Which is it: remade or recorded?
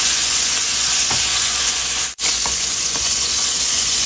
remade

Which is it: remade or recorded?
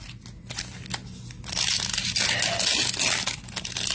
recorded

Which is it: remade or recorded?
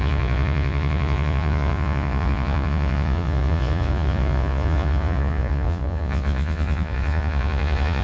remade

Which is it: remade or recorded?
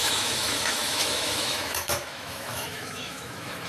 remade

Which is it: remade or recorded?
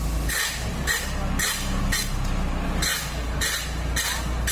recorded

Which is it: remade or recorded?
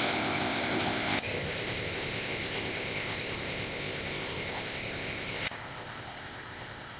remade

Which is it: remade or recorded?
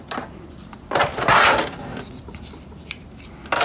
recorded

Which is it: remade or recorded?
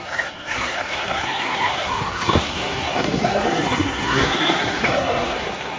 remade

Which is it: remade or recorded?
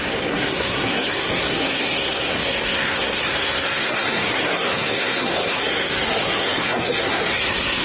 remade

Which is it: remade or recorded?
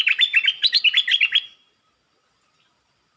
recorded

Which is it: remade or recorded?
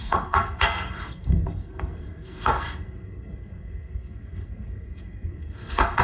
remade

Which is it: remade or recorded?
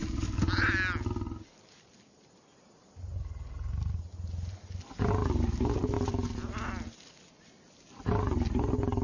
recorded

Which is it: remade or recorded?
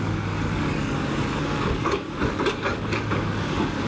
remade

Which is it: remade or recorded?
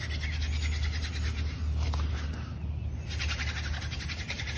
recorded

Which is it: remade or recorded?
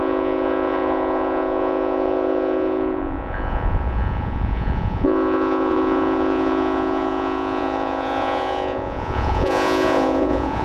remade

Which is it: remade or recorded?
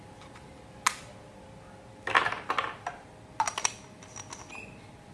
recorded